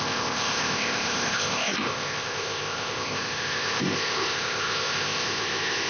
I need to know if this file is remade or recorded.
remade